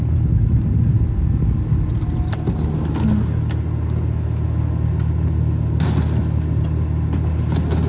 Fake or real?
real